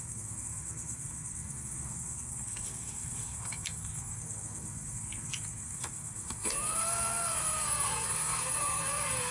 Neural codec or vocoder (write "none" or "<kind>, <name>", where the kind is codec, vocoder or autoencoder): codec, SNAC